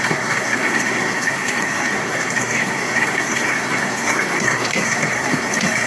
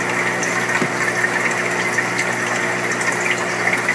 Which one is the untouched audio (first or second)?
second